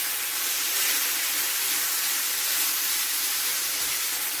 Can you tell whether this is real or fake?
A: real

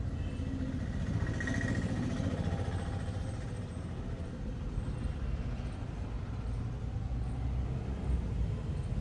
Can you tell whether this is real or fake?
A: real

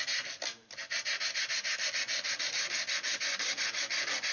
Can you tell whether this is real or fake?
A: real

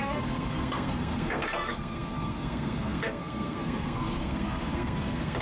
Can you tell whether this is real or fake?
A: fake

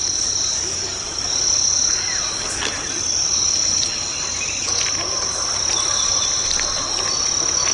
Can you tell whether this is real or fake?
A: real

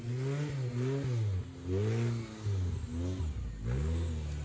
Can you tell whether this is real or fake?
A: real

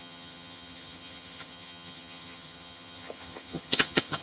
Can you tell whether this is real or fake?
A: fake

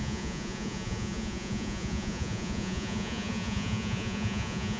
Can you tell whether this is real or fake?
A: fake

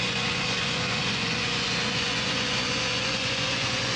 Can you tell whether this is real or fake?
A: fake